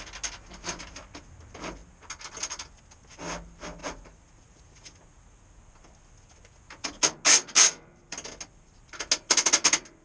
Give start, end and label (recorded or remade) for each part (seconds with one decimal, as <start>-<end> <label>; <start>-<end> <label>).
0.0-3.8 recorded; 3.8-5.6 remade; 5.6-6.4 recorded; 6.4-6.9 remade; 6.9-10.0 recorded